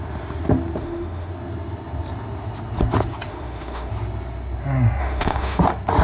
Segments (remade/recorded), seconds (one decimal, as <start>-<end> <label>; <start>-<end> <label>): 0.0-0.8 recorded; 0.8-1.3 remade; 1.3-3.3 recorded; 3.3-3.9 remade; 3.9-5.0 recorded; 5.0-5.6 remade; 5.6-6.0 recorded